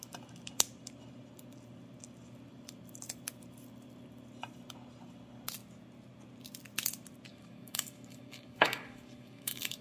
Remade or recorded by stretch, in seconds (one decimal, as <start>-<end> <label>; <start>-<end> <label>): 0.0-7.3 recorded; 7.3-9.8 remade